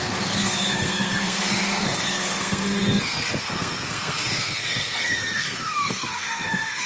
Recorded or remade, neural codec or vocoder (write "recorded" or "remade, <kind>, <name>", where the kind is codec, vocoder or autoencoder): remade, codec, SNAC